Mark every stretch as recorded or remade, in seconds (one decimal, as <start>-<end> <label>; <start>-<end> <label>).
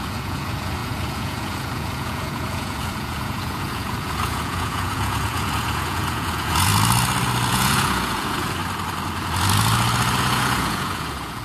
0.0-6.7 remade; 6.7-7.5 recorded; 7.5-8.6 remade; 8.6-10.2 recorded; 10.2-11.4 remade